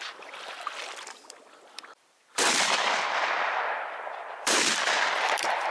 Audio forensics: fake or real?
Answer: fake